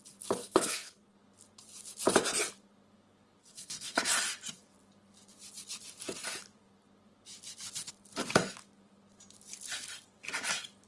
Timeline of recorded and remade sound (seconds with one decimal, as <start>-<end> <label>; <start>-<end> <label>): 0.0-0.4 recorded; 0.4-1.0 remade; 1.0-3.4 recorded; 3.4-4.0 remade; 4.0-10.9 recorded